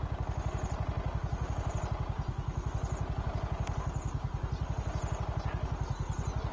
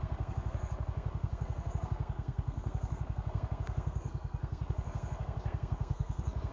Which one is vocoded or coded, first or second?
second